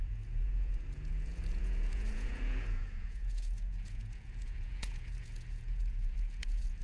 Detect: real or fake fake